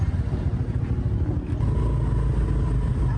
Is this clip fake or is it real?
real